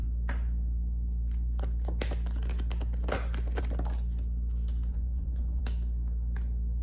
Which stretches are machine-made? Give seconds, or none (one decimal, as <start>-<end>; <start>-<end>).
4.9-5.6